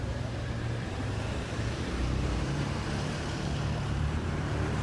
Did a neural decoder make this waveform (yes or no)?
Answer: yes